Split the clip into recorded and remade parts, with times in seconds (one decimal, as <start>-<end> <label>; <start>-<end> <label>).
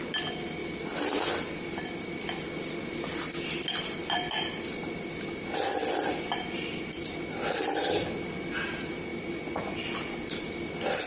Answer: 0.0-0.6 recorded; 0.6-1.5 remade; 1.5-5.8 recorded; 5.8-7.0 remade; 7.0-11.1 recorded